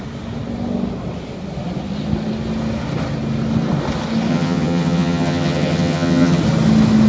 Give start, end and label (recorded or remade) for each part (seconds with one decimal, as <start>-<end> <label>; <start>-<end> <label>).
0.0-4.3 recorded; 4.3-6.4 remade; 6.4-7.1 recorded